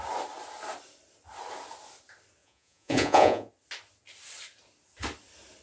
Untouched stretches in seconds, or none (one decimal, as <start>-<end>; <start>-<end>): 0.0-2.4; 3.5-5.6